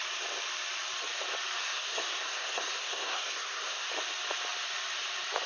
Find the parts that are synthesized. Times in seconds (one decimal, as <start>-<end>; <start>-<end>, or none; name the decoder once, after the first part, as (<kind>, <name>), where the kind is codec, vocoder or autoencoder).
1.6-3.9 (codec, SNAC)